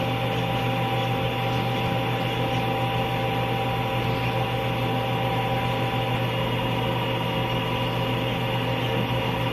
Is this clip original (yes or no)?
yes